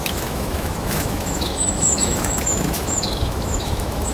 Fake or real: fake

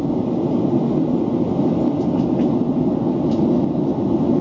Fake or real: real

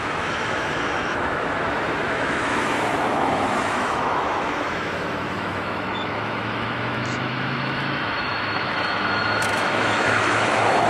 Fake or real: fake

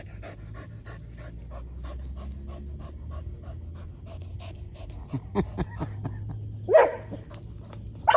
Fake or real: real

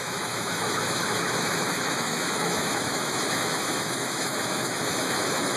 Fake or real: fake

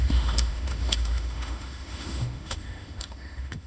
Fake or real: fake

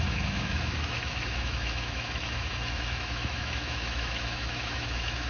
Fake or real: fake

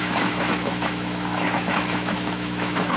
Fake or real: fake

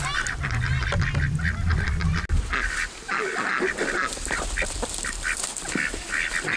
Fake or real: real